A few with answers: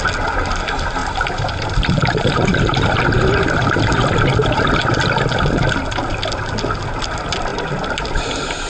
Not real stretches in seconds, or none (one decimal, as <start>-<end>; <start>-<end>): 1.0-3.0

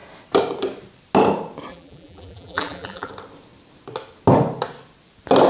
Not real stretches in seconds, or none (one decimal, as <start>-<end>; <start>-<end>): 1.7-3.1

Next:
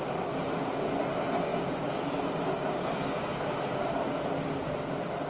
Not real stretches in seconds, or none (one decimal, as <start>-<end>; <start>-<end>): none

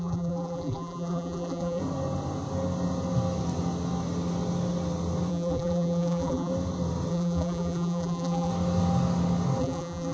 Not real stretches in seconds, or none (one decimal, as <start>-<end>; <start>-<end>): 0.0-1.8; 5.3-6.5; 7.1-8.5; 9.6-10.1

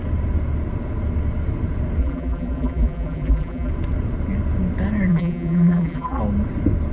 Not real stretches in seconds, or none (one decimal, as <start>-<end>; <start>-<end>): 2.0-3.7; 5.1-6.2

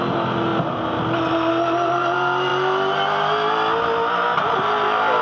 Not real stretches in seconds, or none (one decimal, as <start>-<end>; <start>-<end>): 0.0-0.5; 1.5-2.5; 4.4-5.2